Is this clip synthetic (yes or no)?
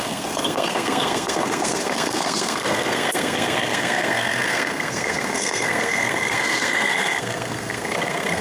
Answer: yes